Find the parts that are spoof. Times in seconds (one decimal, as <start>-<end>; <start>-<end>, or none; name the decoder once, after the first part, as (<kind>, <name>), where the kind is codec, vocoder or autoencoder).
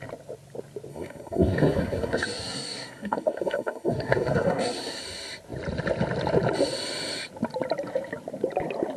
0.9-5.0 (codec, SNAC)